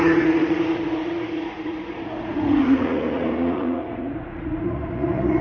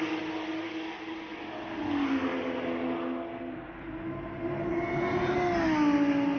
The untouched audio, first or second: second